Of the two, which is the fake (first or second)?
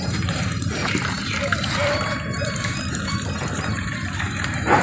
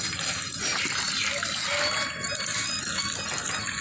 first